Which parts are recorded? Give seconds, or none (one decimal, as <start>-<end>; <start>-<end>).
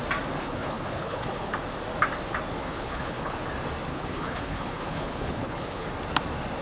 0.0-0.4; 1.5-2.6; 3.5-3.9; 5.9-6.6